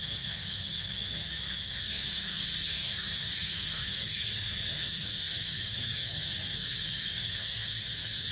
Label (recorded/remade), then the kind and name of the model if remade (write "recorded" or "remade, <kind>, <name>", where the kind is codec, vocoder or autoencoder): remade, codec, SNAC